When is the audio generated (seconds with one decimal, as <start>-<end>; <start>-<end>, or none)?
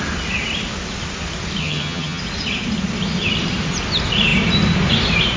1.6-2.2